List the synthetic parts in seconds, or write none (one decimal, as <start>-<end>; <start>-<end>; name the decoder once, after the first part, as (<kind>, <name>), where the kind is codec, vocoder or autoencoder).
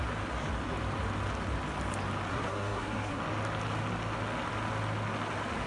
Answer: 2.3-3.2 (codec, SNAC)